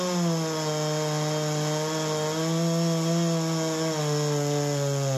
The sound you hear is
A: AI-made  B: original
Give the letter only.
B